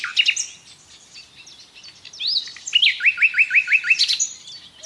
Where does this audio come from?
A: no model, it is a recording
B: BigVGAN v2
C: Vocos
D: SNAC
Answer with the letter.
A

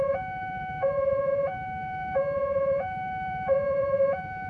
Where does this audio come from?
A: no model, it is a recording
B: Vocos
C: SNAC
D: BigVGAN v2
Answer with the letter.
B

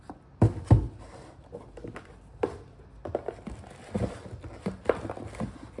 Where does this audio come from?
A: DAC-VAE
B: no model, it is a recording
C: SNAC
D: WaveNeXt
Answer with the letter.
B